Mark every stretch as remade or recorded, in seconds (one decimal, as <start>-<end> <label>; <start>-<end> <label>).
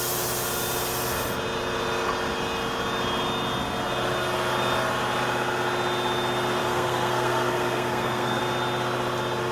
0.0-6.6 recorded; 6.6-8.4 remade; 8.4-9.5 recorded